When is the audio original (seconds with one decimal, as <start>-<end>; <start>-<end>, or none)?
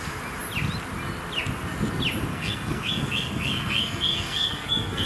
0.0-2.3